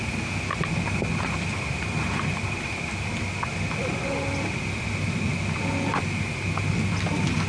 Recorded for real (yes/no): yes